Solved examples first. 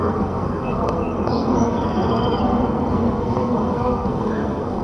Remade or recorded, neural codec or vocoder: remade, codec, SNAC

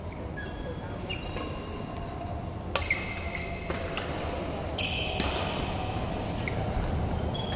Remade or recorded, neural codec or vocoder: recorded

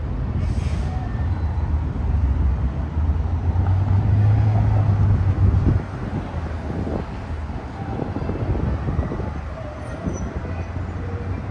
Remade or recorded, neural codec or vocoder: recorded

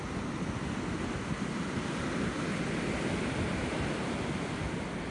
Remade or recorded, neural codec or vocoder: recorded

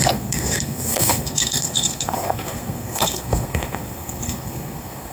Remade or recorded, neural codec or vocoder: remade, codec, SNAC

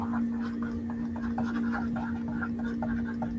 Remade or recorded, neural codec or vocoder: recorded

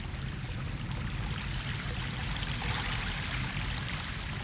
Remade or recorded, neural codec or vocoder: recorded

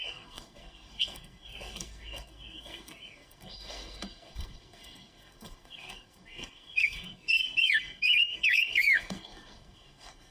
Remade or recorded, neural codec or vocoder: remade, codec, SNAC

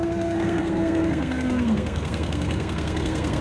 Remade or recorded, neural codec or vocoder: remade, codec, SNAC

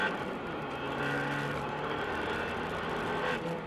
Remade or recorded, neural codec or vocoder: recorded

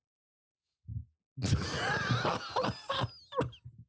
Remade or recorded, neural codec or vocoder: recorded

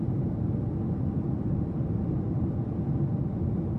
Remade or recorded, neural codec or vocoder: recorded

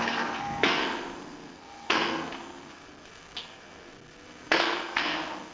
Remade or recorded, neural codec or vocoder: remade, codec, SNAC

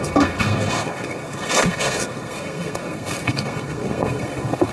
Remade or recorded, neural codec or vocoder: remade, codec, SNAC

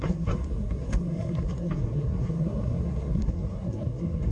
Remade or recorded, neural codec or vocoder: remade, codec, SNAC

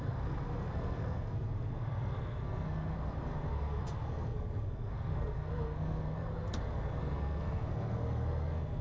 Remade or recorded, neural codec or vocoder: remade, codec, SNAC